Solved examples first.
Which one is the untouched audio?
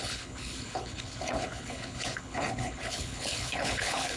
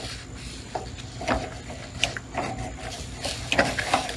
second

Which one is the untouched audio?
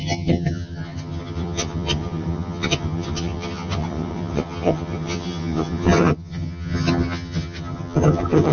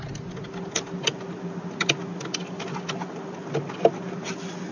second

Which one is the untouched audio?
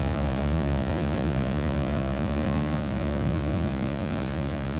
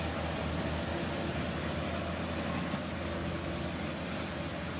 second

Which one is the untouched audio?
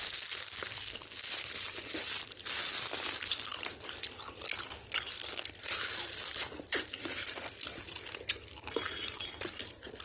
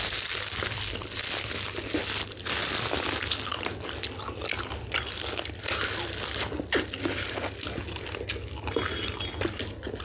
second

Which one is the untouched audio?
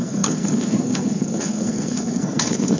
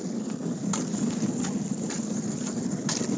second